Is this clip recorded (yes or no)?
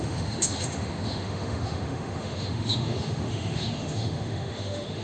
no